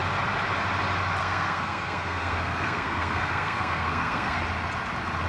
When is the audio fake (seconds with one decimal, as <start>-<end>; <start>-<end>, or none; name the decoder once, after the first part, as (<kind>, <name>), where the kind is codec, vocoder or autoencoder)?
1.2-4.4 (codec, SNAC)